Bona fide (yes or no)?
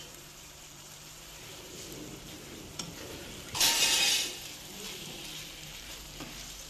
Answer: no